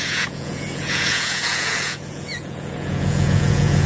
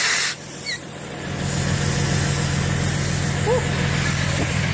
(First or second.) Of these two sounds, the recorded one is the second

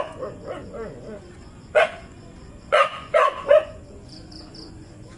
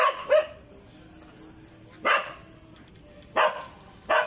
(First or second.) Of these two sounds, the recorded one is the second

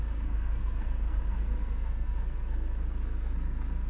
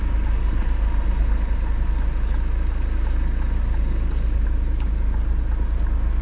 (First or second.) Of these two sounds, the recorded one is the second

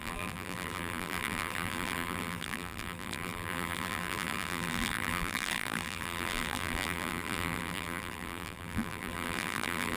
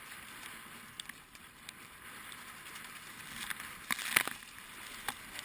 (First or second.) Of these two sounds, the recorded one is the second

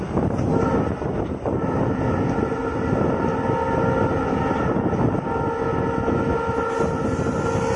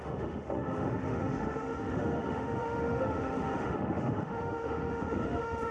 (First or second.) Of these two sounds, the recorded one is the first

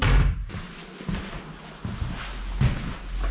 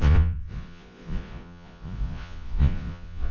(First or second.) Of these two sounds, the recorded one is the first